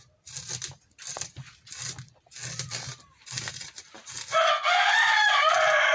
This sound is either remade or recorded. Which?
recorded